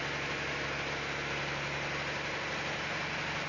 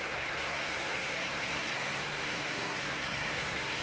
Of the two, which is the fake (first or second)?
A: second